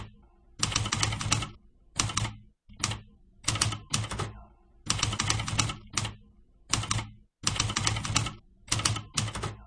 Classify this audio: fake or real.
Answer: real